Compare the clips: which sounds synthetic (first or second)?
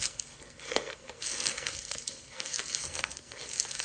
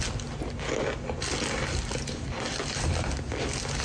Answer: first